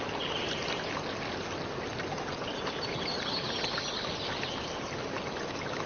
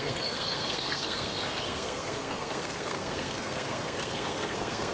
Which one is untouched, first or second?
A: first